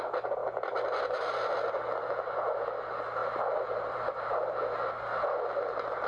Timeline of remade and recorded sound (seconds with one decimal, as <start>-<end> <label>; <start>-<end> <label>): 0.0-6.1 recorded